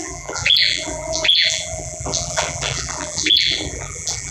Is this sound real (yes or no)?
no